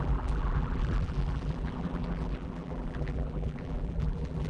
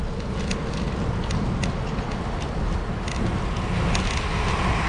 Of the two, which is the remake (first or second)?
first